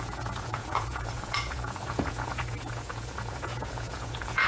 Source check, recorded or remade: remade